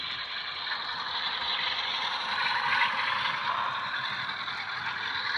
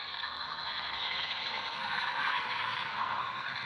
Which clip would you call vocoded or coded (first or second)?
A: second